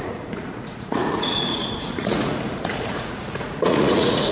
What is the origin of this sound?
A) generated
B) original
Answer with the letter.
A